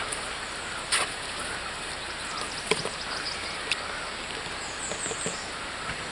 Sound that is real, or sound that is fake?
real